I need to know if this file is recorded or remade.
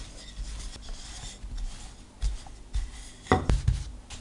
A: recorded